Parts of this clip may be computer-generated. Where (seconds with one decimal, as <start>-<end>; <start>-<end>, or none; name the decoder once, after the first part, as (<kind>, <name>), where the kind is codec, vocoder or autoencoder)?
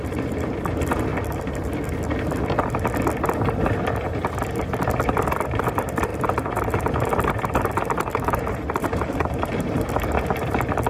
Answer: 0.0-1.1 (vocoder, BigVGAN v2); 3.8-10.9